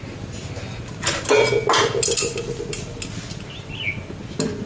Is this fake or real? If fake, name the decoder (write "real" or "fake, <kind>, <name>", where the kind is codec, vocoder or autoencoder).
real